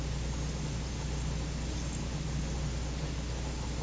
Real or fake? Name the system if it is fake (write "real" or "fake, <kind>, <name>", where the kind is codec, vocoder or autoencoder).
real